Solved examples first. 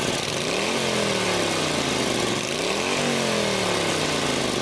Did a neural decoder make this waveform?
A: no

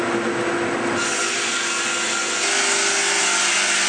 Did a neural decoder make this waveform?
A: no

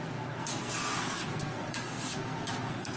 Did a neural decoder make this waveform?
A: yes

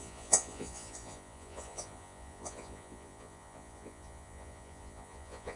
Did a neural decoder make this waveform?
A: yes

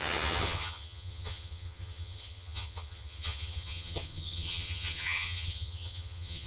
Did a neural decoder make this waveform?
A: yes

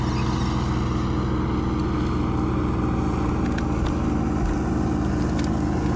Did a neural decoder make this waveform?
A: no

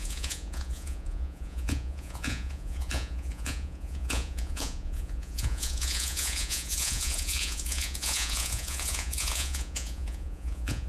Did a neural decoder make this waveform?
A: yes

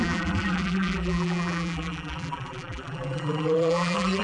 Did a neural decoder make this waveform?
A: yes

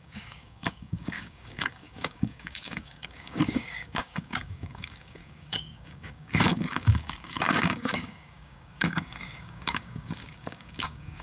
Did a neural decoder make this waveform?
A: yes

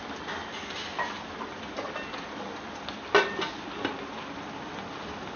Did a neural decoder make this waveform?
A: no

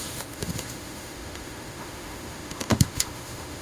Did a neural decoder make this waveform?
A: yes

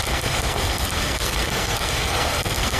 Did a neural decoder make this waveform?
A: yes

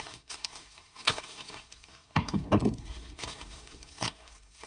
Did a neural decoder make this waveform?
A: yes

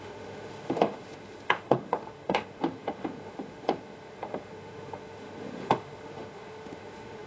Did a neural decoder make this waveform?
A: yes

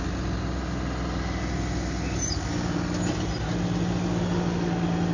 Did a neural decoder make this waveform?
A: no